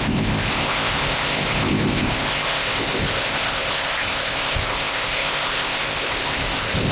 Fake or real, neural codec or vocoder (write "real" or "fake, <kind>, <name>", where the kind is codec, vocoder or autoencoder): fake, codec, ZipCodec